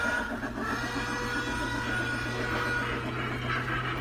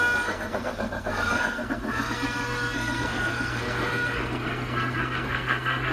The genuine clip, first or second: first